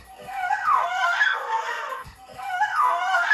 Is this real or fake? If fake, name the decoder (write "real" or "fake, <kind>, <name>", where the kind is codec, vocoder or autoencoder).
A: fake, codec, SNAC